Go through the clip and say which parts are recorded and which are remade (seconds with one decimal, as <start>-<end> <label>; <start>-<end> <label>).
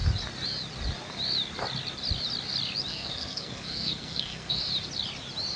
0.0-2.9 recorded; 2.9-4.6 remade; 4.6-5.6 recorded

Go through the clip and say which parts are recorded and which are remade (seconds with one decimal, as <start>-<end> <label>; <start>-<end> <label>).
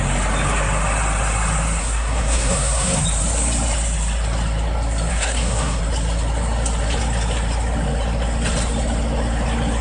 0.0-1.8 recorded; 1.8-3.0 remade; 3.0-5.1 recorded; 5.1-5.8 remade; 5.8-9.8 recorded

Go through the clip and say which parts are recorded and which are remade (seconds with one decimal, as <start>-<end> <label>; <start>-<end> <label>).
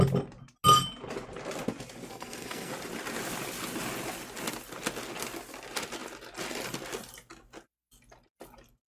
0.0-2.1 recorded; 2.1-2.7 remade; 2.7-8.9 recorded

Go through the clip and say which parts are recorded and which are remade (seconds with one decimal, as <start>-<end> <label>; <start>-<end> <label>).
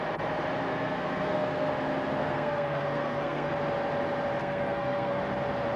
0.0-0.7 recorded; 0.7-1.7 remade; 1.7-2.2 recorded; 2.2-3.5 remade; 3.5-4.4 recorded; 4.4-5.2 remade; 5.2-5.8 recorded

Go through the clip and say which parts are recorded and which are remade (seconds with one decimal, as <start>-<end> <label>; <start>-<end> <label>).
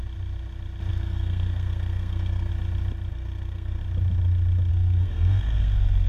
0.0-0.9 recorded; 0.9-2.5 remade; 2.5-3.1 recorded; 3.1-3.8 remade; 3.8-4.7 recorded; 4.7-6.1 remade